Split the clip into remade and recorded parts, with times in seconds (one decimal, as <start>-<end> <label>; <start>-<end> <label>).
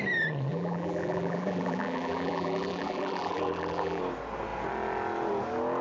0.0-0.5 recorded; 0.5-4.0 remade; 4.0-5.8 recorded